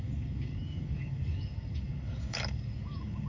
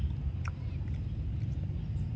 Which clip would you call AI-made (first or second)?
first